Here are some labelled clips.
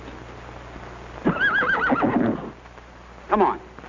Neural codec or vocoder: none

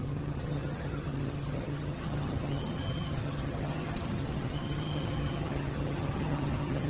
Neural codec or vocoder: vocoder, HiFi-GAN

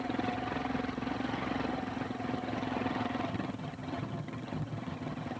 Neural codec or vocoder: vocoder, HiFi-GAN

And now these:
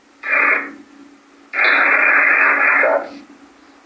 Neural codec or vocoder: none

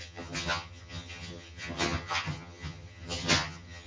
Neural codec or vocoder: vocoder, HiFi-GAN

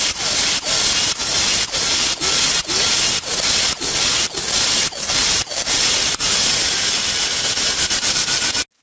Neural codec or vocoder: none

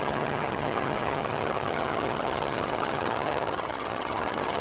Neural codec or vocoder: vocoder, HiFi-GAN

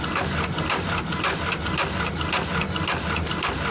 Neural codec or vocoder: none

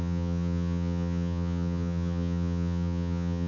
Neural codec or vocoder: vocoder, HiFi-GAN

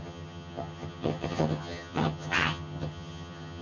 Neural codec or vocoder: vocoder, HiFi-GAN